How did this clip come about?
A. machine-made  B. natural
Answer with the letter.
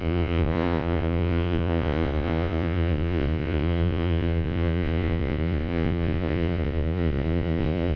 A